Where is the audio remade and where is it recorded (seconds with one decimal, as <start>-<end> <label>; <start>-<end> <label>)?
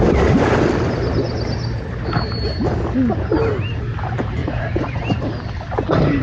0.0-4.4 recorded; 4.4-5.0 remade; 5.0-6.2 recorded